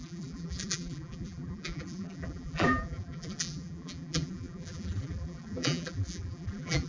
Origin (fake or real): fake